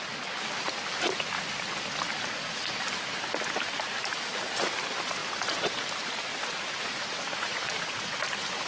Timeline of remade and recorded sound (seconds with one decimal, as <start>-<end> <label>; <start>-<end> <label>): 0.0-5.2 recorded; 5.2-5.7 remade; 5.7-6.3 recorded; 6.3-8.2 remade; 8.2-8.7 recorded